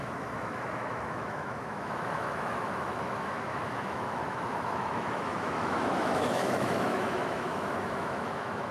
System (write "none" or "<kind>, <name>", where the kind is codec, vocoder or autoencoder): autoencoder, DAC-VAE